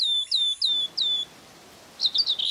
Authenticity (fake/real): real